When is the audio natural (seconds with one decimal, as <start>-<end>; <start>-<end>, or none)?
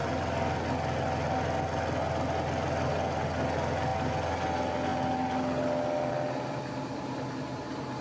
0.0-8.0